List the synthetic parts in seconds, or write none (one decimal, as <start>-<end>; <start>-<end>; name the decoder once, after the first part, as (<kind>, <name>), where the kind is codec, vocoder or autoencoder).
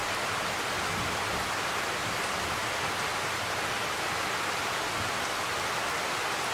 none